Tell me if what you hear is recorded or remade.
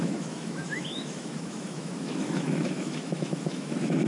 remade